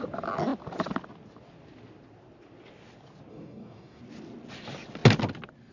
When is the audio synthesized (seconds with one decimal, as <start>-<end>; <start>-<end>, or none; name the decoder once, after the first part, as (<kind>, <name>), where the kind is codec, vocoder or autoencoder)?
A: 3.3-4.0 (codec, DAC)